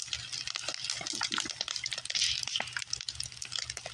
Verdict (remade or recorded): recorded